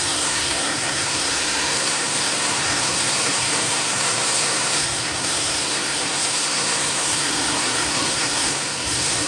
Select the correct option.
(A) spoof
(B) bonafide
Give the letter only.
A